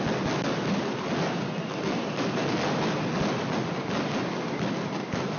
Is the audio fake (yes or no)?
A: no